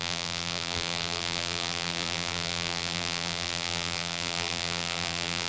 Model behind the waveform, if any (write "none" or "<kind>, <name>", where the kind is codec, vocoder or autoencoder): vocoder, BigVGAN v2